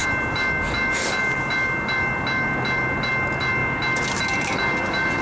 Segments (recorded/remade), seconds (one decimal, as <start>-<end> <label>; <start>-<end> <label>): 0.0-5.2 recorded

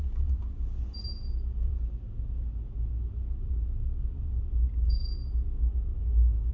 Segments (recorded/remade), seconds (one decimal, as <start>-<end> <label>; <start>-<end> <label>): 0.0-5.9 recorded; 5.9-6.5 remade